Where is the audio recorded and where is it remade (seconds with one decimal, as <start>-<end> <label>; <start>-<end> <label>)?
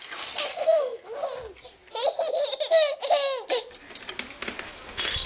0.0-0.5 recorded; 0.5-1.1 remade; 1.1-5.3 recorded